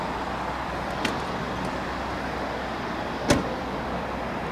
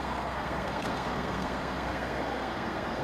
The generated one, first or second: second